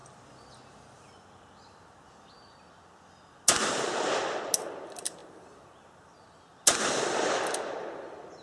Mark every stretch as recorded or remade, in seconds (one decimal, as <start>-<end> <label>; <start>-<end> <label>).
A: 0.0-5.2 recorded; 5.2-6.1 remade; 6.1-8.4 recorded